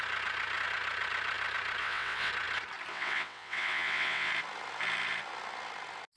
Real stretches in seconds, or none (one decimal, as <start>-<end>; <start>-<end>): 0.0-1.8; 2.3-2.9; 4.3-6.2